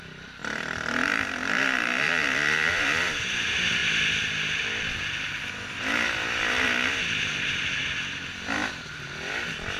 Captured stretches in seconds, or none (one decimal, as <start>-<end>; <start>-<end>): 3.8-5.8; 7.8-9.8